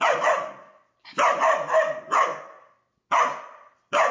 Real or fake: real